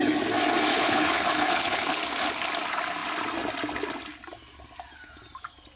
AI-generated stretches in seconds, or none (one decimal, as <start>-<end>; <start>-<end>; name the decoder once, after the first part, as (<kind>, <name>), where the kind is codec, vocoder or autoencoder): 0.7-2.0 (codec, HILCodec)